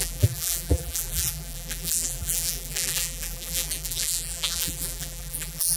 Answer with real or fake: fake